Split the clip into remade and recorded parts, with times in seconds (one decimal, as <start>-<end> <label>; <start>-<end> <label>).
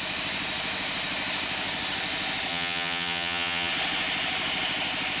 0.0-2.5 recorded; 2.5-3.7 remade; 3.7-5.2 recorded